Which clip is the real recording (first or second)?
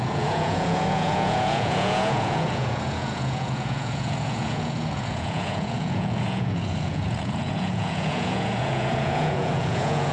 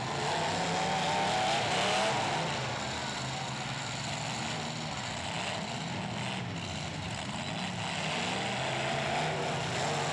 second